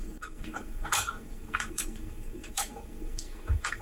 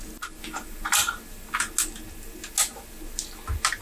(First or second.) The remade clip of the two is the first